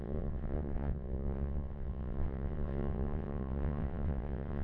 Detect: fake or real fake